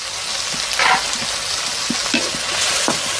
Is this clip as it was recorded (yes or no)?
yes